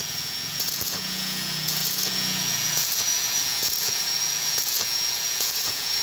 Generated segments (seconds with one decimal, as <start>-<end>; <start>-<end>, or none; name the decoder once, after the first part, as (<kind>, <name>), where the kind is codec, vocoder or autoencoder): 0.0-6.0 (vocoder, Vocos)